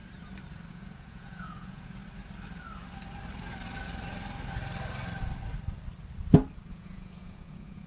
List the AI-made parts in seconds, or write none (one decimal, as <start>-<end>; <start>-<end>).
0.7-2.0; 6.7-7.9